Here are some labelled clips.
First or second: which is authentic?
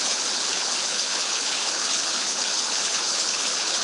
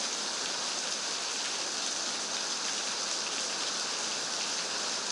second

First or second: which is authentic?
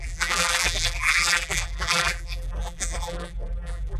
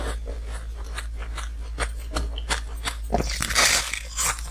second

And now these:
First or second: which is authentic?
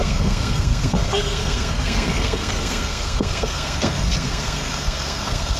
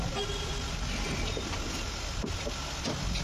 second